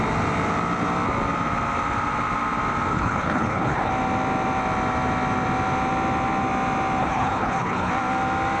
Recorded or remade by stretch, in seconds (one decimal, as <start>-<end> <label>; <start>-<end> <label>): 0.0-2.9 recorded; 2.9-3.9 remade; 3.9-7.0 recorded; 7.0-7.9 remade; 7.9-8.6 recorded